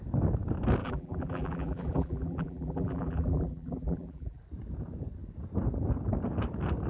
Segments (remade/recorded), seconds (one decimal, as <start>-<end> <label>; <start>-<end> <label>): 0.0-0.8 recorded; 0.8-4.4 remade; 4.4-6.9 recorded